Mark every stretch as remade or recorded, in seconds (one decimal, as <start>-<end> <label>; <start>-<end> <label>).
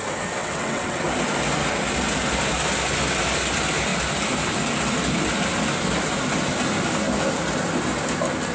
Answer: 0.0-0.4 recorded; 0.4-1.0 remade; 1.0-8.5 recorded